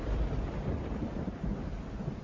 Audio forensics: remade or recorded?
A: recorded